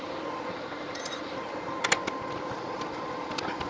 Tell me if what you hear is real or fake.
real